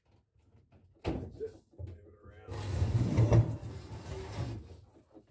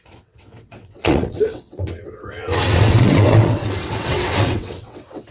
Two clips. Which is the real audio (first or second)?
first